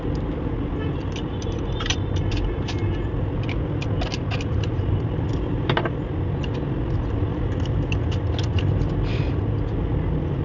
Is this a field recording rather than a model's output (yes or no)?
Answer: yes